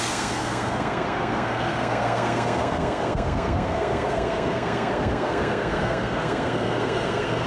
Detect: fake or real fake